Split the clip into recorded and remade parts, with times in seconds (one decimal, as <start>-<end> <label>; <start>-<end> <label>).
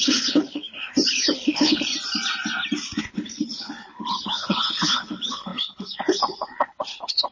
0.0-1.9 remade; 1.9-3.0 recorded; 3.0-7.3 remade